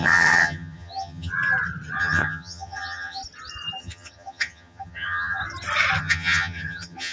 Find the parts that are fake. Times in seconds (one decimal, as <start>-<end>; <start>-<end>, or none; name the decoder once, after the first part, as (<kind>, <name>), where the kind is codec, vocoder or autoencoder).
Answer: 0.0-1.3 (vocoder, HiFi-GAN); 2.0-3.2; 3.8-5.4; 6.0-7.1